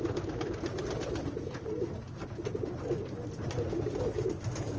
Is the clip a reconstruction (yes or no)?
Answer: no